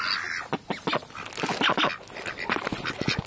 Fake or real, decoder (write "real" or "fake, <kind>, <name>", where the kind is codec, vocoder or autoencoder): real